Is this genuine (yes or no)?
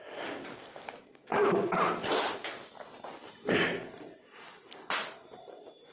yes